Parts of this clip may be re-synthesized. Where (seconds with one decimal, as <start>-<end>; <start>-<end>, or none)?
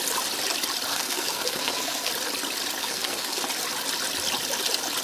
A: 0.9-2.1; 2.8-3.4